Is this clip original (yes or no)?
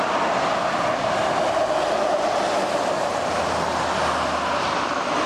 yes